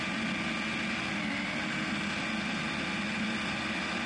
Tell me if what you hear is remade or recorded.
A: recorded